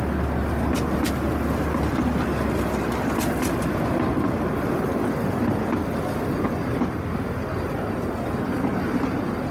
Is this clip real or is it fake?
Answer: real